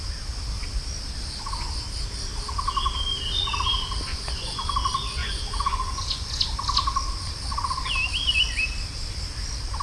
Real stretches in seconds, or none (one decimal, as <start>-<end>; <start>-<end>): 0.0-4.1; 4.7-5.2; 6.4-9.8